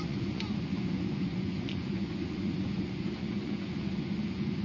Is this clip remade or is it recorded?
remade